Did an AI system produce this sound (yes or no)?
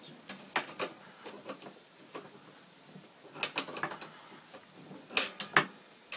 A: no